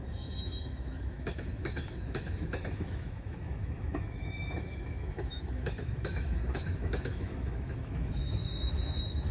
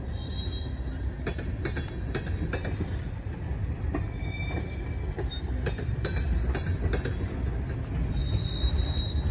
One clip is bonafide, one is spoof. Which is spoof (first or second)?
first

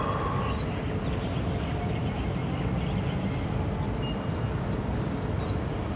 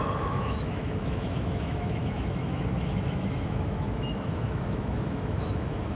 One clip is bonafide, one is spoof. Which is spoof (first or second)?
second